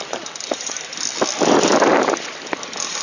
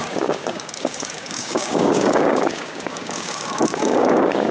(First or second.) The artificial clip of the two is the second